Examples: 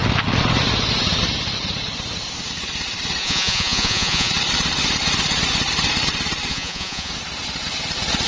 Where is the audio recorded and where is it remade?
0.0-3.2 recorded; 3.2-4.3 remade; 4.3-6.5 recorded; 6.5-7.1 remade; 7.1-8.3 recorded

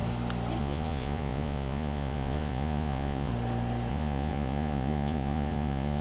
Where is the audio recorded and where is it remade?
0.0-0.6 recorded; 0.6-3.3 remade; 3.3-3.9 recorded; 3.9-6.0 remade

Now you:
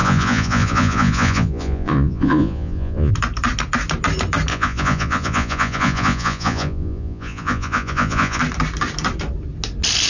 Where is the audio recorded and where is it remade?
0.0-3.1 remade; 3.1-4.5 recorded; 4.5-8.4 remade; 8.4-10.1 recorded

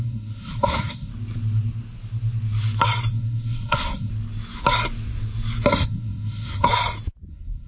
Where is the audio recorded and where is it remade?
0.0-1.1 remade; 1.1-3.1 recorded; 3.1-4.1 remade; 4.1-5.7 recorded; 5.7-6.7 remade; 6.7-7.3 recorded; 7.3-7.7 remade